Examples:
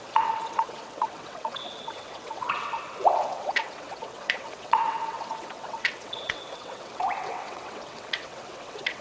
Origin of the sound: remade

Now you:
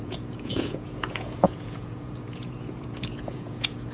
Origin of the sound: remade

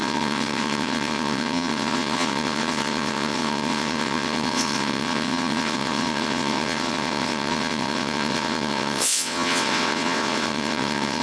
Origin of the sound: remade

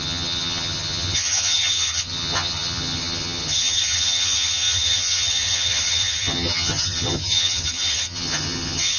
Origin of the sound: remade